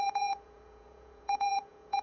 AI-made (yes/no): yes